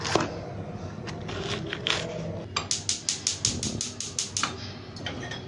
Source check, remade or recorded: recorded